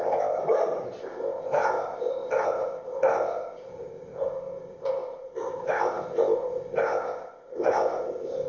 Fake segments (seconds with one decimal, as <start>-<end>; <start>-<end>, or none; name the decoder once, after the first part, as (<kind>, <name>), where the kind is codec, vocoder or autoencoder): 0.0-0.4 (codec, ZipCodec); 1.0-8.5